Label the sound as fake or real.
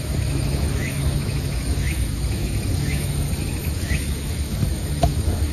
fake